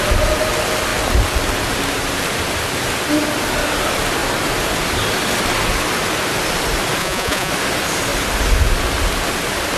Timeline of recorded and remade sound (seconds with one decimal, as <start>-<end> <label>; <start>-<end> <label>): 0.0-7.0 recorded; 7.0-7.5 remade; 7.5-9.8 recorded